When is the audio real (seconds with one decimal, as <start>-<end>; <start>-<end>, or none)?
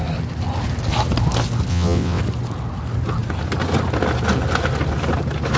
0.0-1.7; 2.2-5.6